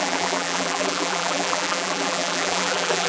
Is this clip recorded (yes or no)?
no